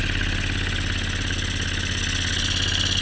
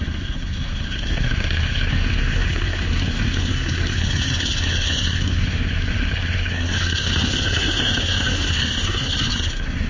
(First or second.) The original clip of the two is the first